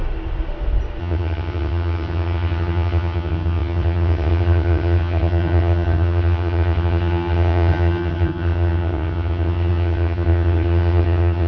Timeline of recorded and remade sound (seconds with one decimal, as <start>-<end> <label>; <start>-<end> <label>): 0.0-1.0 recorded; 1.0-11.5 remade